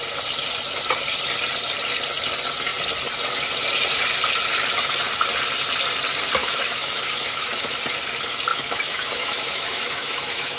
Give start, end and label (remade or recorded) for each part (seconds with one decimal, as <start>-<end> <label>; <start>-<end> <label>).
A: 0.0-6.4 recorded; 6.4-7.7 remade; 7.7-8.5 recorded; 8.5-10.6 remade